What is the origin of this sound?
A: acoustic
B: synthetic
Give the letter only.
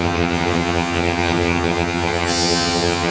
B